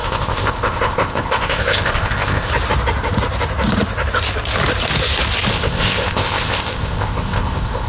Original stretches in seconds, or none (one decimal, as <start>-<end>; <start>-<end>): 2.5-5.5